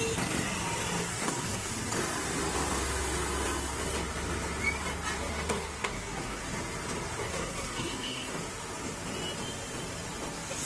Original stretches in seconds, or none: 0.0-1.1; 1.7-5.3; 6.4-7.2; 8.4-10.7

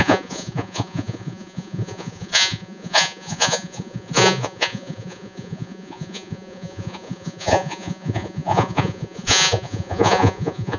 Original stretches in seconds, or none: none

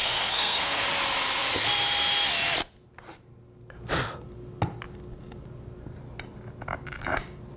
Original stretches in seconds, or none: 0.8-7.6

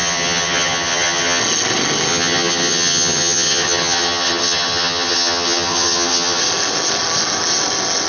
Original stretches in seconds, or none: 1.4-2.1; 6.4-8.1

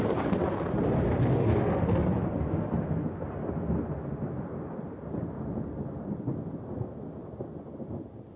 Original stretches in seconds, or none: 0.0-8.4

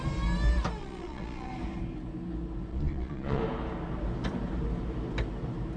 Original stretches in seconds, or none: 0.0-0.8; 1.5-2.7; 3.4-5.8

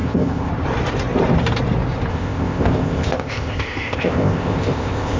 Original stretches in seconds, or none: 0.5-2.1